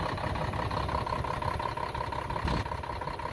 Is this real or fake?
real